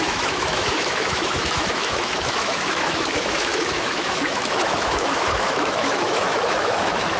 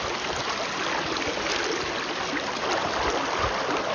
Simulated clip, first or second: first